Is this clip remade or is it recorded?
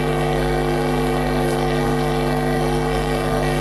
remade